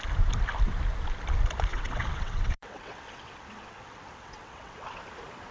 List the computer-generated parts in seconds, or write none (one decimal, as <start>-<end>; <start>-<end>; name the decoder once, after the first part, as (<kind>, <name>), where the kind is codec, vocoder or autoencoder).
1.7-5.0 (vocoder, WaveNeXt)